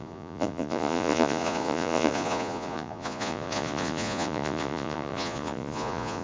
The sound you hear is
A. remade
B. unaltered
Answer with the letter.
A